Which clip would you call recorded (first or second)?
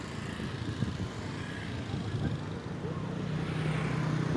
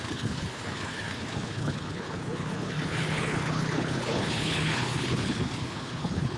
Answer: first